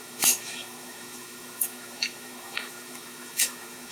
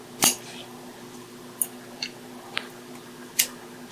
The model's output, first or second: first